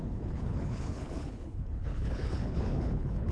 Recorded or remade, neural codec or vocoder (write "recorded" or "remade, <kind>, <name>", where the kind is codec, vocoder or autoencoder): remade, codec, HILCodec